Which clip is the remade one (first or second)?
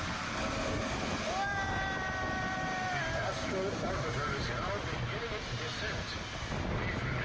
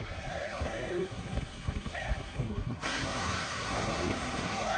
second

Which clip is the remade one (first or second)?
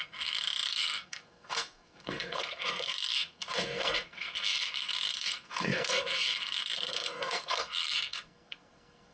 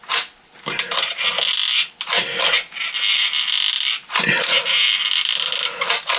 first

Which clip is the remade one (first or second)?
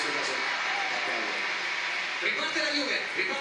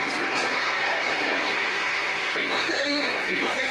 second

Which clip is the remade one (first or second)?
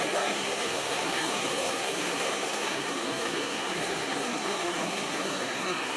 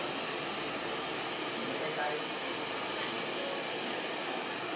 first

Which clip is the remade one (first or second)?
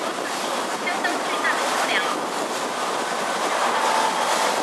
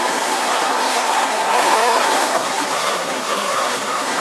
second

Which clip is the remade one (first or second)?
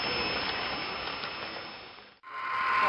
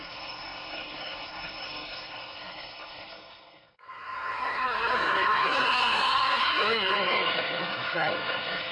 second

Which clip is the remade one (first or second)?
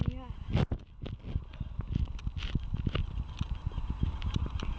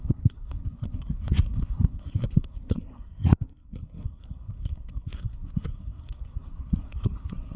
second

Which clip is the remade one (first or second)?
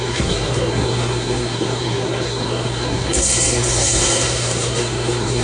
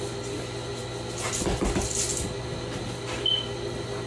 first